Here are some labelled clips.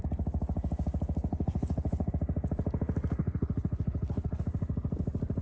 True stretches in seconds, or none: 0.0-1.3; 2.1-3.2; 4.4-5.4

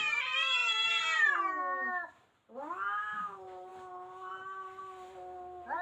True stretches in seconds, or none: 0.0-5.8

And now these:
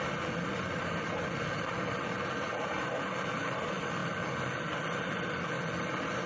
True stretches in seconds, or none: 0.0-6.3

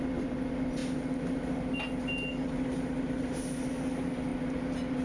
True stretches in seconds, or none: 0.0-5.0